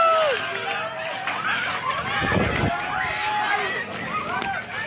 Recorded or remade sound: recorded